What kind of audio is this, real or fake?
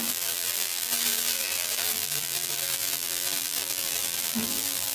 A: fake